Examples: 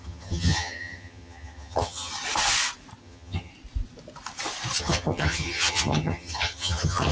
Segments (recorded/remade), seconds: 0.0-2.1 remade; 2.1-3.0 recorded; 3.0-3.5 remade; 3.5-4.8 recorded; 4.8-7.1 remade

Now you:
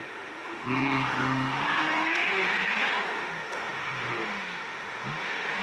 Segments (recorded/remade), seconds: 0.0-5.6 remade

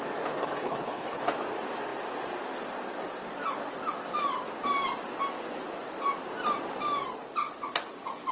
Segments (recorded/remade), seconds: 0.0-0.4 recorded; 0.4-1.2 remade; 1.2-8.3 recorded